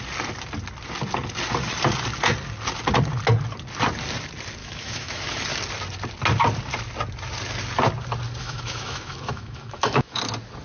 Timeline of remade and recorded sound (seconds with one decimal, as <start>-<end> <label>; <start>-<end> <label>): 0.0-4.6 recorded; 4.6-5.4 remade; 5.4-8.4 recorded; 8.4-10.2 remade; 10.2-10.6 recorded